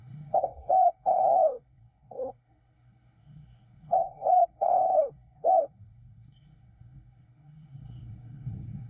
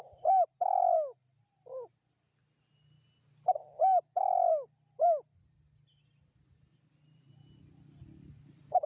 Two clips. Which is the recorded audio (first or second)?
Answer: second